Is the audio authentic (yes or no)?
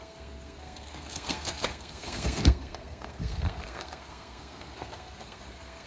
no